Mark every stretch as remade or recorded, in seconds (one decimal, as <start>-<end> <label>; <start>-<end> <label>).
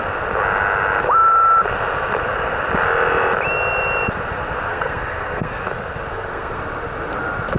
0.0-4.7 recorded; 4.7-5.6 remade; 5.6-6.1 recorded; 6.1-6.6 remade; 6.6-7.6 recorded